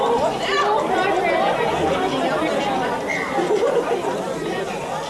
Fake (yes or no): no